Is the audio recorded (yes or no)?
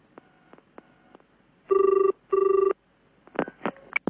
yes